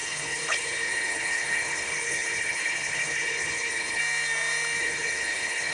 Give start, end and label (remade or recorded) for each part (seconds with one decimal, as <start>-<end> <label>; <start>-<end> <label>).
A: 0.0-4.0 remade; 4.0-4.8 recorded; 4.8-5.7 remade